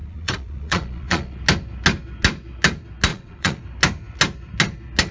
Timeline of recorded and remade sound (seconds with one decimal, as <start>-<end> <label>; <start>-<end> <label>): 0.0-1.4 remade; 1.4-3.1 recorded; 3.1-3.6 remade; 3.6-5.1 recorded